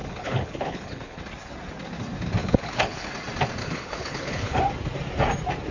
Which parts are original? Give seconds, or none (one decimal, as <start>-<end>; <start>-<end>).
1.2-2.4; 3.1-3.6; 4.6-5.7